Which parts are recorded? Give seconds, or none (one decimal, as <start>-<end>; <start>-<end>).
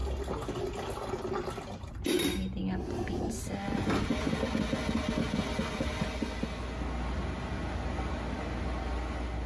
0.0-9.5